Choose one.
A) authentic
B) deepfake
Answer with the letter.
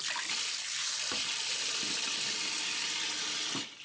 A